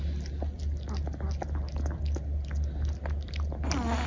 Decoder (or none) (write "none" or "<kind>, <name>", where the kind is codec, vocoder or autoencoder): none